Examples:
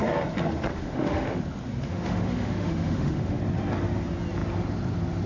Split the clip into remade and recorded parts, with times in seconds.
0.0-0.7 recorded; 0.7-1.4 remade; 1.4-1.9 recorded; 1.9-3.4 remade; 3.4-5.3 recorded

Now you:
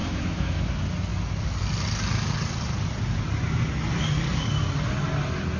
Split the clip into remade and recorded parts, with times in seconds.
0.0-0.7 remade; 0.7-5.6 recorded

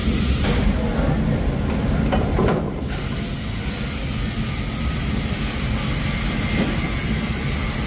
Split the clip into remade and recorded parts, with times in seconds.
0.0-7.9 recorded

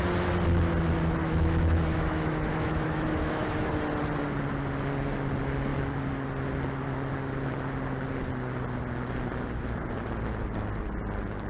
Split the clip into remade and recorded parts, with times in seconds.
0.0-1.2 recorded; 1.2-3.7 remade; 3.7-11.5 recorded

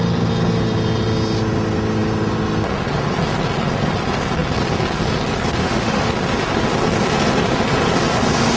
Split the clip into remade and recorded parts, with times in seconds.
0.0-5.6 recorded; 5.6-6.1 remade; 6.1-8.6 recorded